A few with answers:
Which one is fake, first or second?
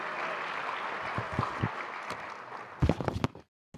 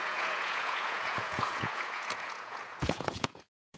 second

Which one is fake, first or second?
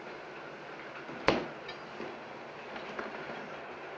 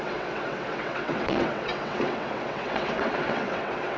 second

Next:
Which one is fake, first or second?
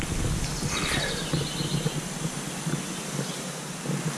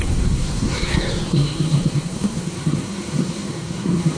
second